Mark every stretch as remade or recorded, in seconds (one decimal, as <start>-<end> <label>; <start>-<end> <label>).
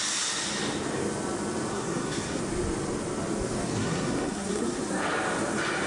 0.0-1.7 recorded; 1.7-2.4 remade; 2.4-3.8 recorded; 3.8-4.8 remade; 4.8-5.9 recorded